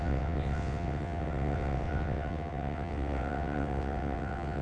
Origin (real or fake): fake